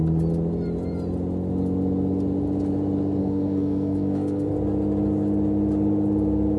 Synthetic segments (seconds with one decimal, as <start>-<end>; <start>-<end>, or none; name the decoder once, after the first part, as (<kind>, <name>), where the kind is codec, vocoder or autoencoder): 3.2-4.5 (codec, SNAC)